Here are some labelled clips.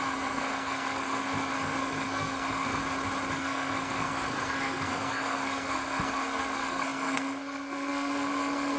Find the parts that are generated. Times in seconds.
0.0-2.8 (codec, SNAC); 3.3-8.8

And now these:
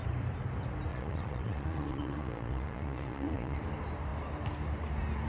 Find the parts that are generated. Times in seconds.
0.9-3.6 (vocoder, Vocos)

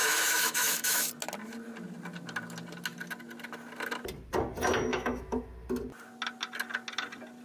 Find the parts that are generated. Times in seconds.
0.0-1.1 (autoencoder, DAC-VAE); 4.9-5.4